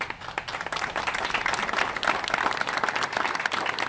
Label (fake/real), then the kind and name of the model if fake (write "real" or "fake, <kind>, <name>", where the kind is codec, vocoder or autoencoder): real